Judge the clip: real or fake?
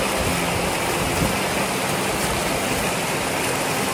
real